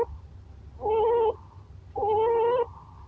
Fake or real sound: real